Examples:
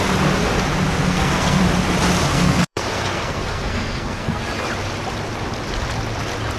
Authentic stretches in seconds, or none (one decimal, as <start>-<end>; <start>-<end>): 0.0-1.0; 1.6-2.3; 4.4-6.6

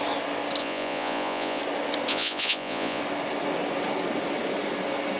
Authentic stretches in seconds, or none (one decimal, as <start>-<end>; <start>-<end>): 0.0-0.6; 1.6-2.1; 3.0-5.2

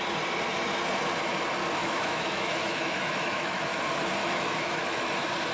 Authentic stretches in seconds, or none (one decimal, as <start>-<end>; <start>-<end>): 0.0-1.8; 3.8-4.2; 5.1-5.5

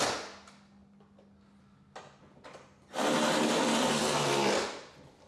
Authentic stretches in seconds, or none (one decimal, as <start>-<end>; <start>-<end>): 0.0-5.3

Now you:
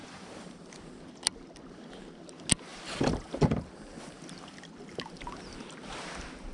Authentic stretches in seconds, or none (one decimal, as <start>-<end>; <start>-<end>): 2.1-2.7; 5.4-6.5

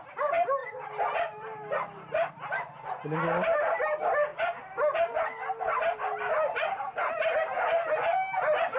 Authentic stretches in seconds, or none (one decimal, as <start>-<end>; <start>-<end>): 0.0-8.8